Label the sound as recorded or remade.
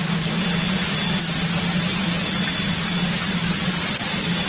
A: recorded